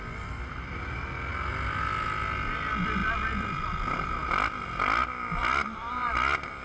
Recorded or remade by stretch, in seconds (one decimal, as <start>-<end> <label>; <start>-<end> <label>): 0.0-1.3 recorded; 1.3-1.8 remade; 1.8-5.4 recorded; 5.4-5.9 remade; 5.9-6.6 recorded